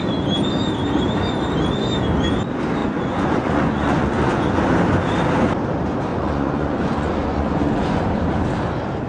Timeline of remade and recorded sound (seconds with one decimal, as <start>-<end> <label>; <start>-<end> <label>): 0.0-2.8 recorded; 2.8-4.6 remade; 4.6-6.1 recorded; 6.1-8.1 remade; 8.1-9.1 recorded